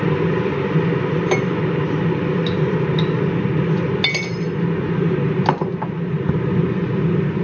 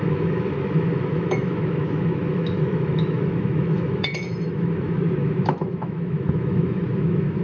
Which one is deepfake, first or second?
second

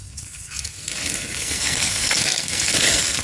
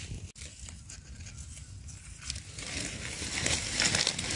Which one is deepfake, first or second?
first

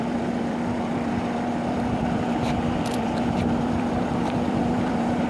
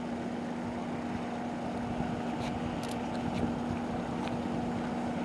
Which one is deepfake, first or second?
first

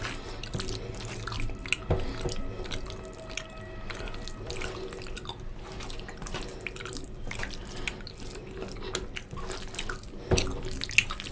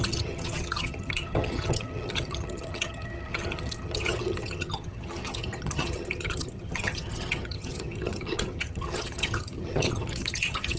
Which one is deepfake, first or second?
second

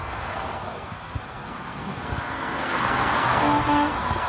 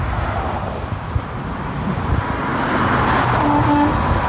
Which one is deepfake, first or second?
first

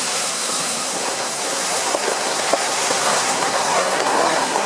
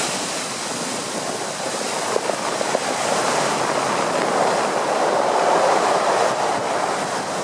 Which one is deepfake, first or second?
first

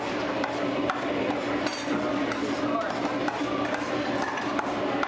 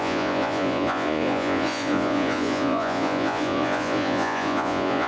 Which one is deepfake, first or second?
second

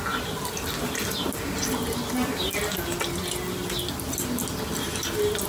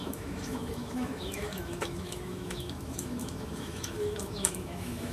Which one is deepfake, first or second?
second